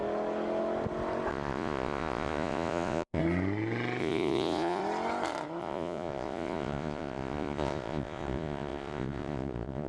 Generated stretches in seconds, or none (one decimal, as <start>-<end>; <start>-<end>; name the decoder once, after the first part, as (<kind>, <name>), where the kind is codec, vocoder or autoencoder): 1.3-3.2 (vocoder, Vocos); 4.0-4.8; 5.6-9.9